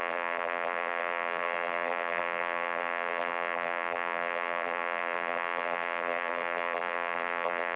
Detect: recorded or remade remade